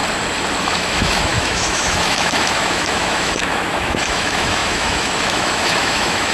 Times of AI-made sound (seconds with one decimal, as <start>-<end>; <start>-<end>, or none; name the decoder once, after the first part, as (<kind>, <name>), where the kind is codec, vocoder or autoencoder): 0.6-6.3 (autoencoder, DAC-VAE)